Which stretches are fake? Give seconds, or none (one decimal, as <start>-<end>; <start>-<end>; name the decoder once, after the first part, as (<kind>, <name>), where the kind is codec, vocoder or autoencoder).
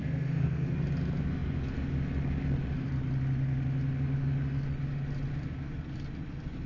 0.0-0.7 (codec, SNAC)